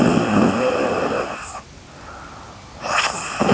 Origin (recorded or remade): recorded